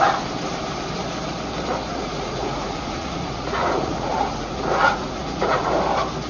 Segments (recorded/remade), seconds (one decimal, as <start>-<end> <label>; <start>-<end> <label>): 0.0-1.9 recorded; 1.9-5.7 remade; 5.7-6.3 recorded